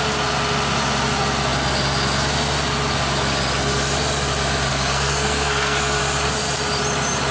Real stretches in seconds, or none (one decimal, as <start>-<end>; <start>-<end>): 0.0-4.7; 6.0-7.3